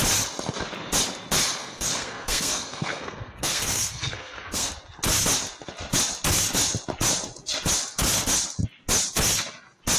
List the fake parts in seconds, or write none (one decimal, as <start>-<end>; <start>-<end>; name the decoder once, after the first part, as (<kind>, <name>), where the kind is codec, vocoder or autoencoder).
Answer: 1.6-4.7 (codec, SNAC)